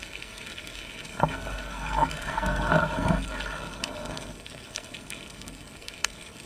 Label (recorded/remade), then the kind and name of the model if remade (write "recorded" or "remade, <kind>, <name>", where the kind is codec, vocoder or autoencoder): remade, codec, SNAC